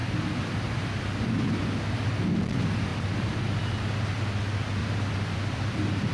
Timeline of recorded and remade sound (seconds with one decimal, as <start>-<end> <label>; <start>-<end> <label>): 0.0-2.9 recorded; 2.9-3.8 remade; 3.8-4.8 recorded; 4.8-6.1 remade